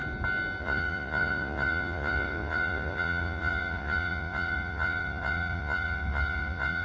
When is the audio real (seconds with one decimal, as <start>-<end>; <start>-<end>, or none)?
0.0-0.6